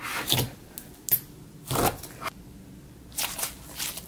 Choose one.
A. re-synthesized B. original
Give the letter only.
B